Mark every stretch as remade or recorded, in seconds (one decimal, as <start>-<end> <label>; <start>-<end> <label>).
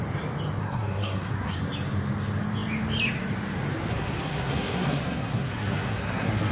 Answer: 0.0-0.6 recorded; 0.6-1.6 remade; 1.6-3.9 recorded; 3.9-6.5 remade